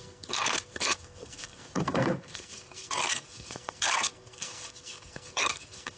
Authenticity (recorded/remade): remade